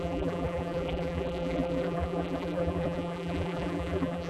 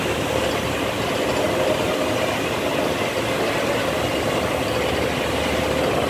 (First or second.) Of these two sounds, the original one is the second